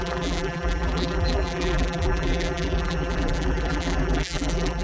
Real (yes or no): no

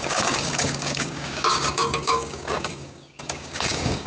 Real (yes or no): no